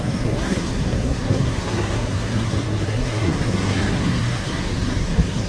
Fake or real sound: fake